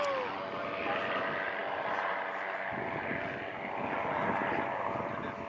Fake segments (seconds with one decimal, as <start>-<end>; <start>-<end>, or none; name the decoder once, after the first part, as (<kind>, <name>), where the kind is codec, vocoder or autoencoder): none